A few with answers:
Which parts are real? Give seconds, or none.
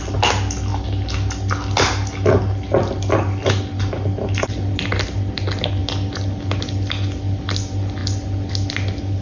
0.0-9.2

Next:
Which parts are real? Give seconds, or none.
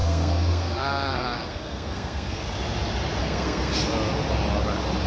2.4-3.2; 3.7-5.1